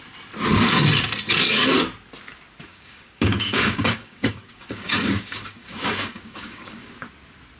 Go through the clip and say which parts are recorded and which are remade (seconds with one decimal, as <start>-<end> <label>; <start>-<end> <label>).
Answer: 0.0-2.7 recorded; 2.7-6.9 remade; 6.9-7.6 recorded